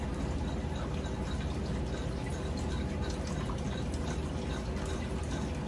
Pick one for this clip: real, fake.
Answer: real